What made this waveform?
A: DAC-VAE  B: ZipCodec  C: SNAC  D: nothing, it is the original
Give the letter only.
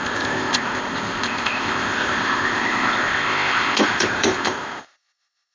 B